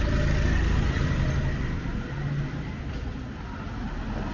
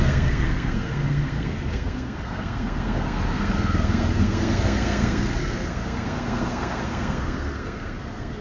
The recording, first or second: first